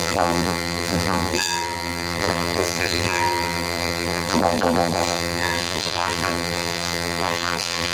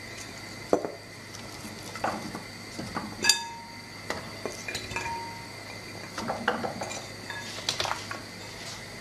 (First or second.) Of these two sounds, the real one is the second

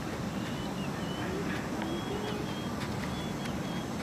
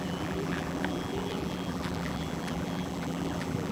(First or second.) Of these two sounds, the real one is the first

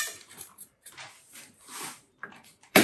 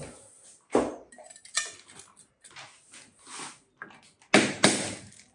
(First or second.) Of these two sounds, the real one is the second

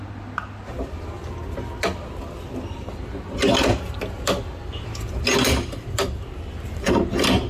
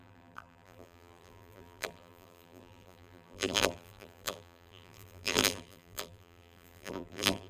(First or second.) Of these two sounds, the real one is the first